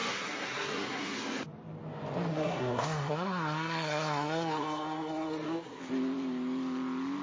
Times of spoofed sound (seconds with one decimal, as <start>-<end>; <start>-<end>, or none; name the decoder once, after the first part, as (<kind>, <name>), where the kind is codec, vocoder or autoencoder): 0.0-1.4 (codec, SNAC); 2.3-5.8